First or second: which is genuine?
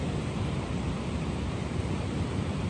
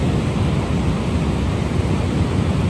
second